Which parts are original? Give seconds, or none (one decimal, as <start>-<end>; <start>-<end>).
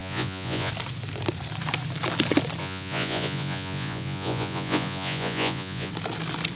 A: 0.7-2.6; 5.9-6.6